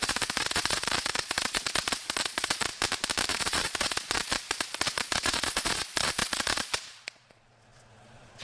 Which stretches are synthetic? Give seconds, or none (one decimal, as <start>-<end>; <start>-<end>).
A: 0.0-2.7; 3.3-8.4